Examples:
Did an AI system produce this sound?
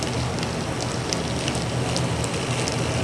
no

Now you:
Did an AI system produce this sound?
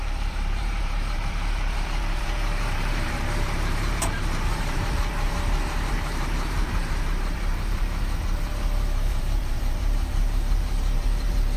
yes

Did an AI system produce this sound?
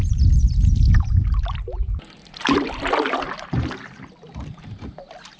yes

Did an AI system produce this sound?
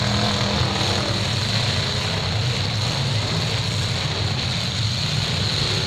no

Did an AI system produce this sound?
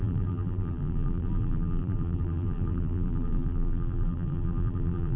yes